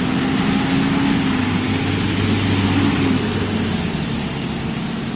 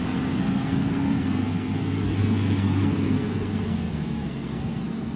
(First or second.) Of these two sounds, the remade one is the second